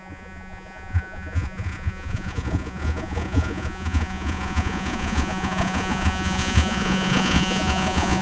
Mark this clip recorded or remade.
remade